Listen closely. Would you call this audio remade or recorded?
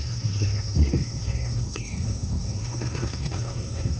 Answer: remade